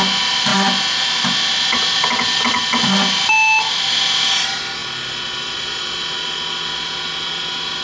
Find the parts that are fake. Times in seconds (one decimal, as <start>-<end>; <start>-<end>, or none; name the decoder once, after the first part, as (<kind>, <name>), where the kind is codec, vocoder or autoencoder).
none